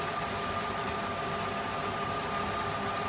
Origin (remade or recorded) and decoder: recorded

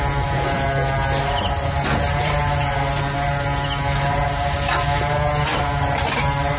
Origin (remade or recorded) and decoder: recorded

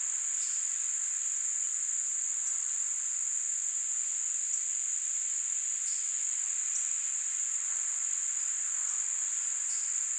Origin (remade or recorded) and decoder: recorded